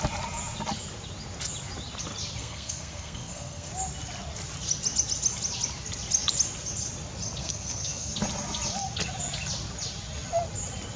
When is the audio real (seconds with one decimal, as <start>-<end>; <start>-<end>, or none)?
0.0-2.4; 3.7-7.4; 8.1-11.0